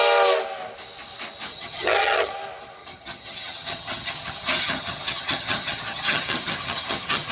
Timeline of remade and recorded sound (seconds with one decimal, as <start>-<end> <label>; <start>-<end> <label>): 0.0-1.5 recorded; 1.5-2.3 remade; 2.3-2.8 recorded; 2.8-7.3 remade